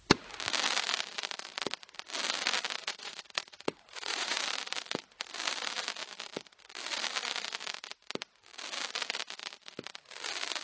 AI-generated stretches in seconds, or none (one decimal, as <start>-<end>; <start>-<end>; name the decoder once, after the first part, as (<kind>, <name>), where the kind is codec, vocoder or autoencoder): 2.8-4.4 (vocoder, Vocos)